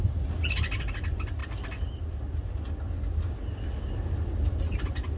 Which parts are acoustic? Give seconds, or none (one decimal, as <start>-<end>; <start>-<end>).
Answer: 0.0-5.2